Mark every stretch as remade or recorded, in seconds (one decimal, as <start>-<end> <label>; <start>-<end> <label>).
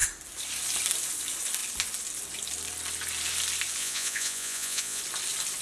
0.0-3.8 recorded; 3.8-5.0 remade; 5.0-5.6 recorded